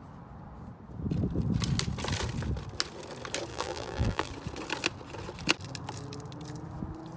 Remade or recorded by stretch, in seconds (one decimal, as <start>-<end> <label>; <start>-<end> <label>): 0.0-3.5 recorded; 3.5-4.3 remade; 4.3-7.2 recorded